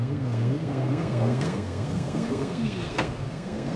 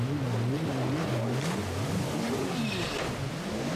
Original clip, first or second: second